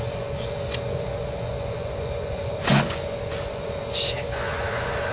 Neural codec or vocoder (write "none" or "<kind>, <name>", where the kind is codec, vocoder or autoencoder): vocoder, Vocos